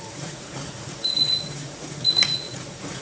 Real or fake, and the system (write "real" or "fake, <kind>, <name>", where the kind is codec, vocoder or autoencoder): fake, vocoder, Vocos